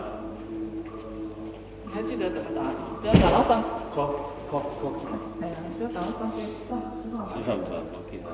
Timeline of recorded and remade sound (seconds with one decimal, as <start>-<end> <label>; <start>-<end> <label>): 0.0-6.7 recorded; 6.7-7.3 remade; 7.3-8.3 recorded